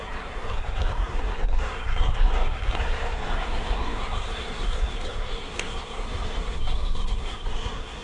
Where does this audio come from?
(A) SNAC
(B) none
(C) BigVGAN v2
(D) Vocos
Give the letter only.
A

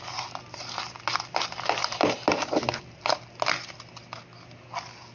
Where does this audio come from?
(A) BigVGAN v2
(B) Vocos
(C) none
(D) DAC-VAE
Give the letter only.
C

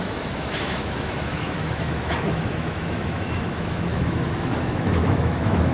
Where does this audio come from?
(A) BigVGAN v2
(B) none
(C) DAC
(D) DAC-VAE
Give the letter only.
D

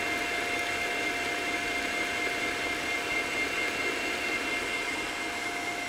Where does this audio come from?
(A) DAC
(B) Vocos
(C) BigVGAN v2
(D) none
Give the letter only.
D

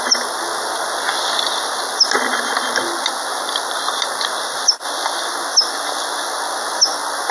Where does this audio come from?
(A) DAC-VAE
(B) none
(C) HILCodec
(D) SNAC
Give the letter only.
B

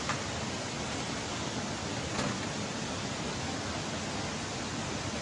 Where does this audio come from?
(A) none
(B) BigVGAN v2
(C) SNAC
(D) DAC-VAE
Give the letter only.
A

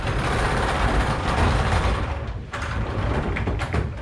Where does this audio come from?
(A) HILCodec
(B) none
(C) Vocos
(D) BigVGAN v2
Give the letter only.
D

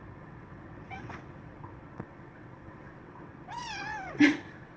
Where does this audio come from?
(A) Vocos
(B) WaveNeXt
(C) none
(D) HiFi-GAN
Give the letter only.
B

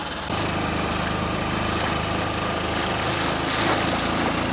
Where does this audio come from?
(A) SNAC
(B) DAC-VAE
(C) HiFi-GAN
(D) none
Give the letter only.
D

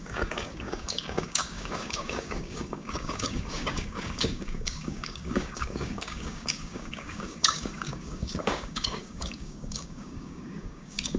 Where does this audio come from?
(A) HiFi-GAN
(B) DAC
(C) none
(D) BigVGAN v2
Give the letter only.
B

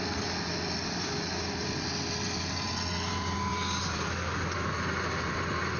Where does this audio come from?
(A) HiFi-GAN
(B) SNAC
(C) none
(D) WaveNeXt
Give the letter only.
C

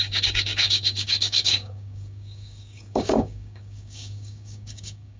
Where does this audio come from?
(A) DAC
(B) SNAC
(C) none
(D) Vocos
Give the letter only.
A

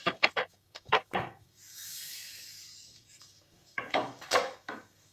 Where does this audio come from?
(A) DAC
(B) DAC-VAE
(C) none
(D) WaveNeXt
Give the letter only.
A